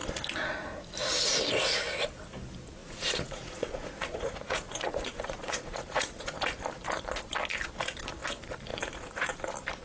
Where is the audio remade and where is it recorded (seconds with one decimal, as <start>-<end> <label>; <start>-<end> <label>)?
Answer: 0.0-2.8 recorded; 2.8-6.4 remade; 6.4-8.7 recorded; 8.7-9.4 remade; 9.4-9.8 recorded